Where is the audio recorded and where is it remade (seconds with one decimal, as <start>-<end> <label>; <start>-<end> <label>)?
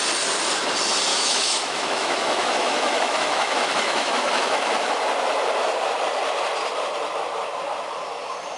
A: 0.0-1.1 recorded; 1.1-4.9 remade; 4.9-8.6 recorded